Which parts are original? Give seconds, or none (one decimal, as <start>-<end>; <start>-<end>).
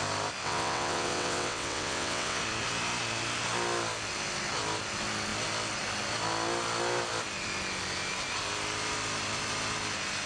0.0-0.4; 2.4-10.3